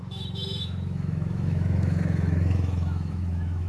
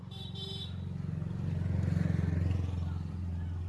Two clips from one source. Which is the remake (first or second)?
first